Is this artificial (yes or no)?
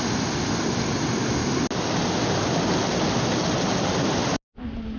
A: no